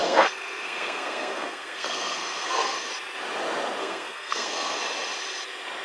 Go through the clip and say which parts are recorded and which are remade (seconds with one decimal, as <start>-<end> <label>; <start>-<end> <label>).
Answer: 0.0-2.9 remade; 2.9-3.8 recorded; 3.8-4.8 remade; 4.8-5.8 recorded